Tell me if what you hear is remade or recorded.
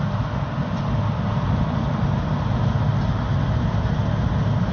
recorded